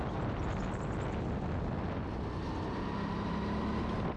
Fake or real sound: real